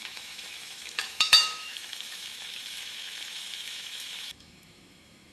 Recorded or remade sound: remade